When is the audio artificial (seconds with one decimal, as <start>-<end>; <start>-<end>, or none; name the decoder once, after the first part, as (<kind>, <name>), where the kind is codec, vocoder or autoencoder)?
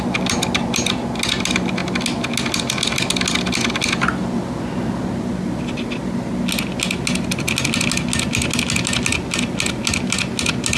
none